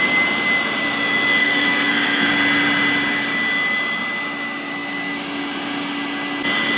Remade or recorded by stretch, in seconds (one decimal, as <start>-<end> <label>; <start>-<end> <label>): 0.0-1.4 recorded; 1.4-2.3 remade; 2.3-6.8 recorded